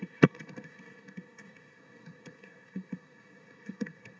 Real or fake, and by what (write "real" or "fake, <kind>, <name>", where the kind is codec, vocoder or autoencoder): fake, codec, SNAC